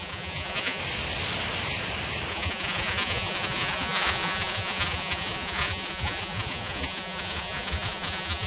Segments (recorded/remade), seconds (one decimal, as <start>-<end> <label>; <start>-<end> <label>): 0.0-0.8 remade; 0.8-2.3 recorded; 2.3-8.5 remade